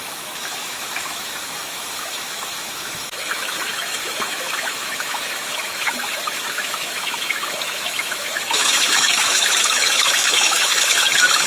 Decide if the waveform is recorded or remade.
remade